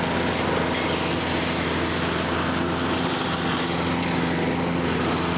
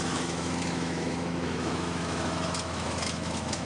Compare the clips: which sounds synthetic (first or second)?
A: second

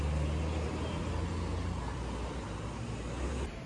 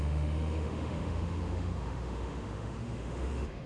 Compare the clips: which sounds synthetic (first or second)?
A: second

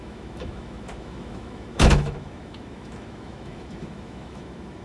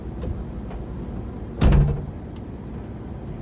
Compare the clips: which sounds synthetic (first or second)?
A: first